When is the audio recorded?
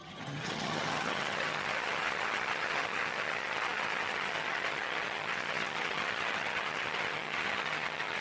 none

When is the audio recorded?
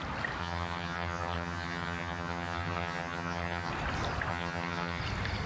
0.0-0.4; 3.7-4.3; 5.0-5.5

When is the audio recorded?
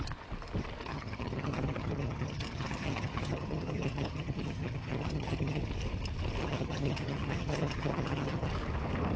0.0-0.9; 5.6-6.4; 8.5-9.2